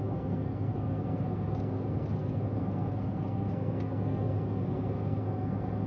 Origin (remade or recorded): remade